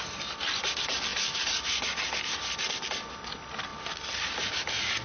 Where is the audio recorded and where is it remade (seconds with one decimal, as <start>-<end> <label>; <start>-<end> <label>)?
0.0-5.0 recorded